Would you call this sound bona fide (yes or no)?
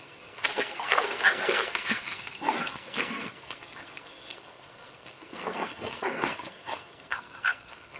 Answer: no